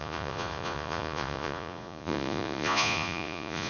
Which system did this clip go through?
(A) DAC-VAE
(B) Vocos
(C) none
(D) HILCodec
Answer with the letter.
B